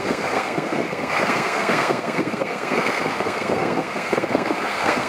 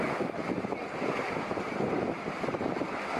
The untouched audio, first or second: second